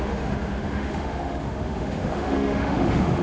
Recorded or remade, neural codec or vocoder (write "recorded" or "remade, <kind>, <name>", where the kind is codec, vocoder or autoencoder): remade, autoencoder, DAC-VAE